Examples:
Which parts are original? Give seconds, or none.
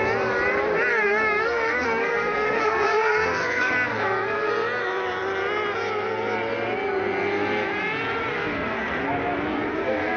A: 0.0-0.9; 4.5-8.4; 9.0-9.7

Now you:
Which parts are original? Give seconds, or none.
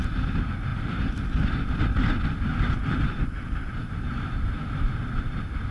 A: 0.0-3.8; 4.4-5.7